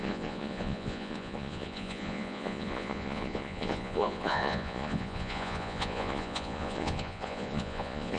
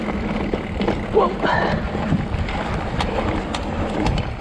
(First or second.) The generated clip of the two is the first